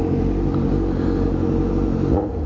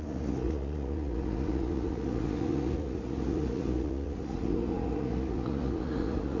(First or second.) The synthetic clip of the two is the second